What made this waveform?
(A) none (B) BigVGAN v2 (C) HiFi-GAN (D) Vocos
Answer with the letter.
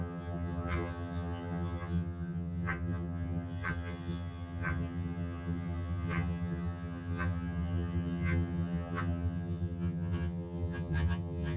C